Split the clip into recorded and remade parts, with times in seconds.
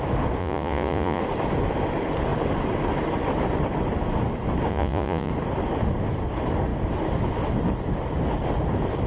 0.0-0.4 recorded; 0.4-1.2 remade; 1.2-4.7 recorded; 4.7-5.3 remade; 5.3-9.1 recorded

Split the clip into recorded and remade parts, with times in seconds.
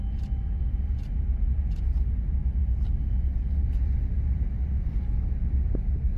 0.0-6.2 recorded